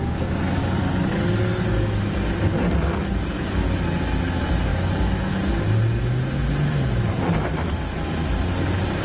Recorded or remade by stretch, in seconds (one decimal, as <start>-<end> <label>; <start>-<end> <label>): 0.0-9.0 recorded

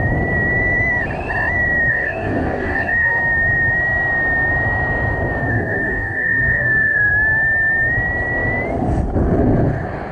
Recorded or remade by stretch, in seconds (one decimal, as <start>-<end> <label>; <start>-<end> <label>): 0.0-1.9 recorded; 1.9-3.2 remade; 3.2-5.5 recorded; 5.5-7.1 remade; 7.1-10.1 recorded

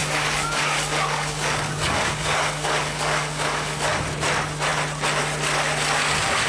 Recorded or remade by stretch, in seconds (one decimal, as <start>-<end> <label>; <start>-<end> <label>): 0.0-3.9 remade; 3.9-6.5 recorded